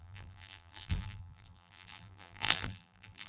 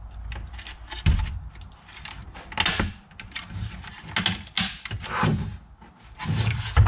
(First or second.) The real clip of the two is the second